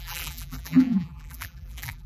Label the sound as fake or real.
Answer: fake